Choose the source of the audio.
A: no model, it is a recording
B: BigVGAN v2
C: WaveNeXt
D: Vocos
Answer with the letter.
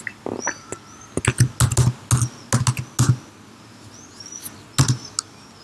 A